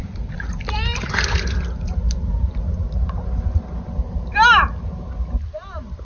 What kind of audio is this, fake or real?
real